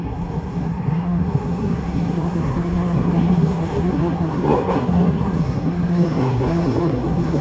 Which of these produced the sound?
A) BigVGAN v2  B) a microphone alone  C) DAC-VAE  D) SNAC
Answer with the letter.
D